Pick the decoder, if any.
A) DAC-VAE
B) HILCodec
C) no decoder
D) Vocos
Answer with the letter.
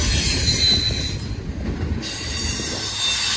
C